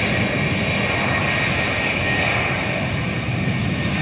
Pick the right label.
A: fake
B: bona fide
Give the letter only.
B